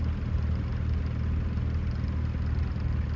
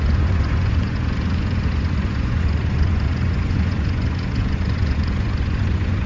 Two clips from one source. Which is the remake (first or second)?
second